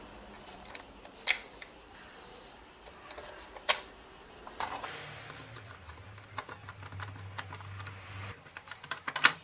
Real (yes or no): no